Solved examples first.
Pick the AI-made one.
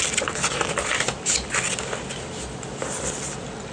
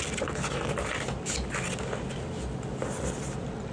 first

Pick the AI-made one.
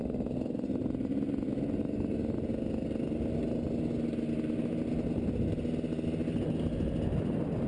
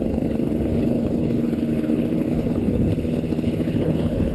second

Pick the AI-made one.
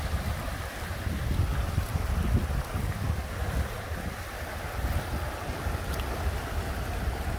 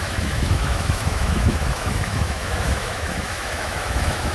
second